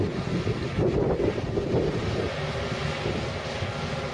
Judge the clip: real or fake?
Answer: real